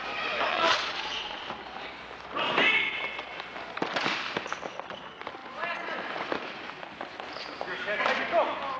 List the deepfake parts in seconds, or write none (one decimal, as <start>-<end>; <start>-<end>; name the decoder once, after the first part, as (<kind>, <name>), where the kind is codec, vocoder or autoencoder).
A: 0.5-1.5 (vocoder, Vocos)